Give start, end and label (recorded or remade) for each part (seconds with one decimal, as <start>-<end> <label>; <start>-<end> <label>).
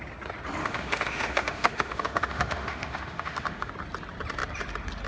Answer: 0.0-0.6 recorded; 0.6-3.7 remade; 3.7-5.1 recorded